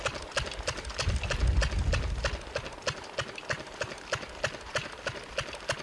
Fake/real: real